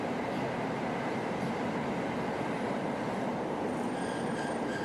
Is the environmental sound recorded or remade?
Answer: recorded